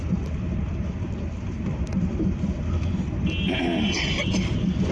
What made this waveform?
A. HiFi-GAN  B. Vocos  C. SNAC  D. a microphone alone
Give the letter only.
D